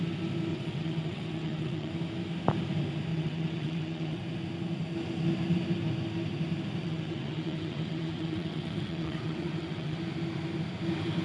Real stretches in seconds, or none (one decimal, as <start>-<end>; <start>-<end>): 0.0-0.5; 1.9-3.1; 4.2-6.8; 10.0-11.2